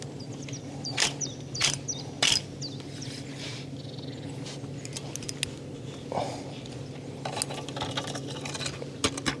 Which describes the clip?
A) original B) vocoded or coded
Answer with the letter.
A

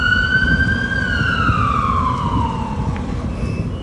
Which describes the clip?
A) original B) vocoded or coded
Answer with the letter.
A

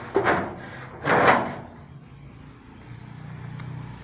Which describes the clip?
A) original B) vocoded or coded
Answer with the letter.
A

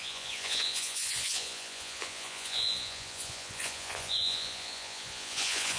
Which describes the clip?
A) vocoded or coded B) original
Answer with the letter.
A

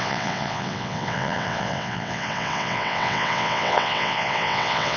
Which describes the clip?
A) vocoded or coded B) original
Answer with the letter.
A